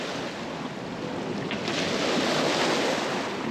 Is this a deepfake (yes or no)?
no